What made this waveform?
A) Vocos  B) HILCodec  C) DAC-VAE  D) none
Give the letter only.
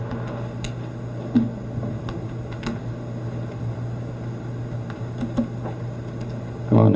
D